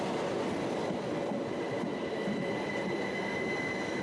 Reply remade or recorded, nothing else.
recorded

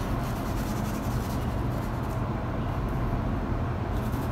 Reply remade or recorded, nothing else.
recorded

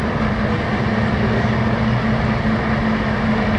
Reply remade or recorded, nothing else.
recorded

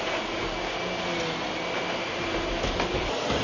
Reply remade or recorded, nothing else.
recorded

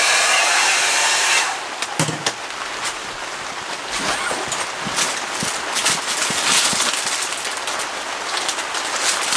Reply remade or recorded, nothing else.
recorded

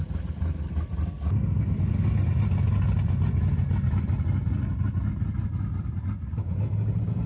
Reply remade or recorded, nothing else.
recorded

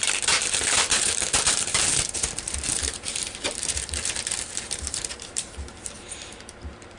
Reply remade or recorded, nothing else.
remade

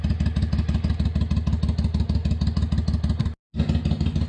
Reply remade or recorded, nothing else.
recorded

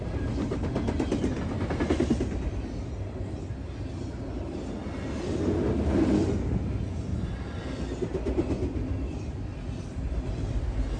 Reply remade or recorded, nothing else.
recorded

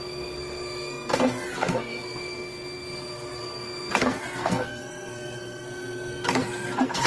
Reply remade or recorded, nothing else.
remade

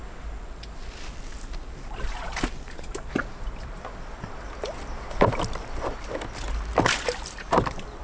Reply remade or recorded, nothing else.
recorded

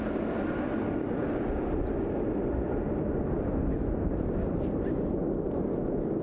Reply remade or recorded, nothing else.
recorded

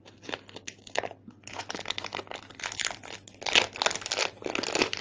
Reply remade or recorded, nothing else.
recorded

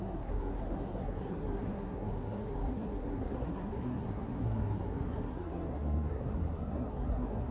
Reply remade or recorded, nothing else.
remade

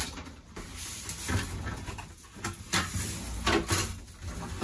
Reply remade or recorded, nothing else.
recorded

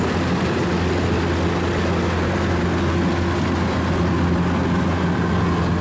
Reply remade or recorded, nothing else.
recorded